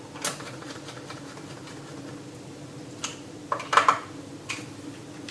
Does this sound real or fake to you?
real